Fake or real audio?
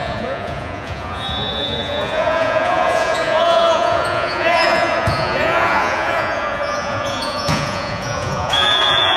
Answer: fake